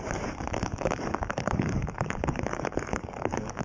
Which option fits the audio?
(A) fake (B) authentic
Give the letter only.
A